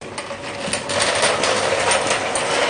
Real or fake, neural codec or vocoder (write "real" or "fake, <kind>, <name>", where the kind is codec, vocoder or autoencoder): real